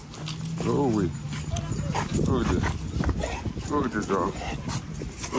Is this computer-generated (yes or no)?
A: no